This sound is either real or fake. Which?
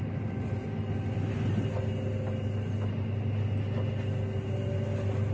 real